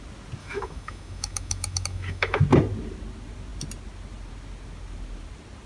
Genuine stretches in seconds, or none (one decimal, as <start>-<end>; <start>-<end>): 0.0-0.4; 2.4-5.7